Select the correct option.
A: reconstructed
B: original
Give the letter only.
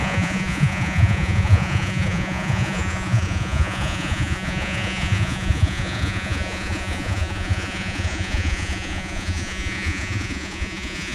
A